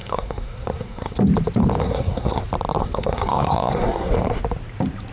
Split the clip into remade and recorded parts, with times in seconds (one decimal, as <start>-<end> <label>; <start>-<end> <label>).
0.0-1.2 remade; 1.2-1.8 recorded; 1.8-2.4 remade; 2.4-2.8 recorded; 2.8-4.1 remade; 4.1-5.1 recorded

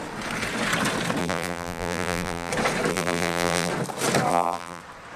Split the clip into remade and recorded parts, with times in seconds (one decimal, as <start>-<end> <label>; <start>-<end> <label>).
0.0-1.2 recorded; 1.2-2.5 remade; 2.5-2.9 recorded; 2.9-3.7 remade; 3.7-4.3 recorded; 4.3-4.8 remade; 4.8-5.2 recorded

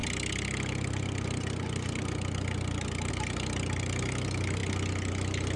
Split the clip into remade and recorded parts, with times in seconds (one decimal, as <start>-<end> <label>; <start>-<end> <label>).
0.0-5.6 recorded

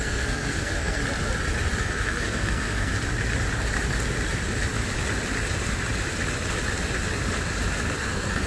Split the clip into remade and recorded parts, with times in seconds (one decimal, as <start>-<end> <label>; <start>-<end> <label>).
0.0-1.0 remade; 1.0-1.8 recorded; 1.8-2.9 remade; 2.9-8.0 recorded; 8.0-8.5 remade